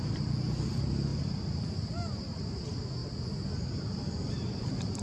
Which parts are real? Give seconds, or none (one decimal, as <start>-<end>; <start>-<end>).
0.0-1.1; 2.6-5.0